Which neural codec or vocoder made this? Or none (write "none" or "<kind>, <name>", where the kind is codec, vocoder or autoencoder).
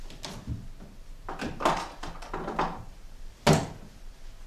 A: none